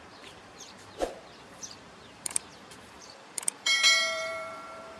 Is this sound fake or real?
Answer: fake